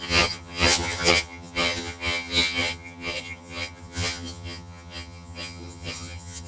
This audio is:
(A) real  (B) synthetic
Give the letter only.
B